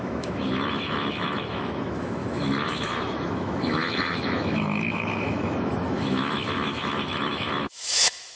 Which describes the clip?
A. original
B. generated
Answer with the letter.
B